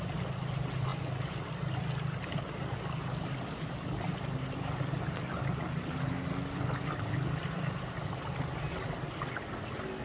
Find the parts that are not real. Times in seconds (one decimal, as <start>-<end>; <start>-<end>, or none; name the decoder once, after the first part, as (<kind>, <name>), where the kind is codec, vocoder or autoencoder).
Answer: none